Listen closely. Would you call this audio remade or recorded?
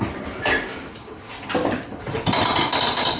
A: recorded